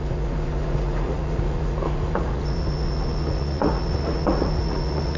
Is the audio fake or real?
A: fake